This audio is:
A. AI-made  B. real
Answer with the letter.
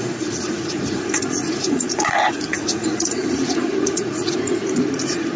A